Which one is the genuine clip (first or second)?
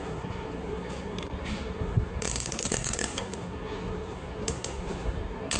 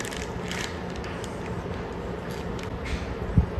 second